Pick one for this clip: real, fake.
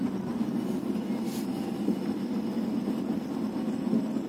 real